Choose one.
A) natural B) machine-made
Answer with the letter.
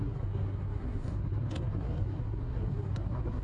B